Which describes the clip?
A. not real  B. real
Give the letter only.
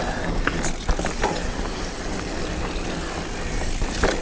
B